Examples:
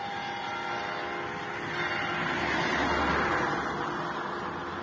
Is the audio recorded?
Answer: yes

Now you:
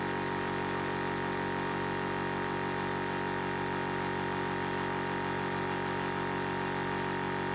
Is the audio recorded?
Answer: yes